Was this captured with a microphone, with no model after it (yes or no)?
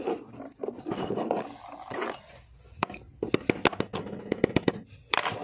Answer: yes